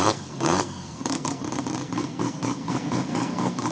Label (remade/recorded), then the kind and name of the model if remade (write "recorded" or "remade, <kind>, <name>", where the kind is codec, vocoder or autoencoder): remade, codec, SNAC